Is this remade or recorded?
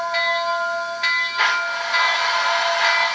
recorded